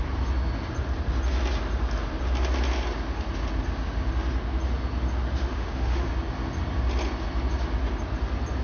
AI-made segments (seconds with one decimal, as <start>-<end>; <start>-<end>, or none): 5.4-6.1